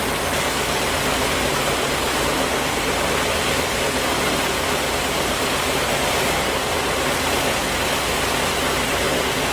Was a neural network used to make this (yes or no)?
no